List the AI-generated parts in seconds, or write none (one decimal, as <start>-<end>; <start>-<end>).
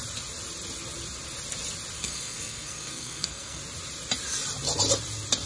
2.0-3.6